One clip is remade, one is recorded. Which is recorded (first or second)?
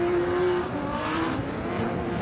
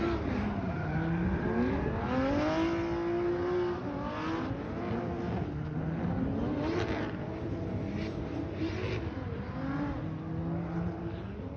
second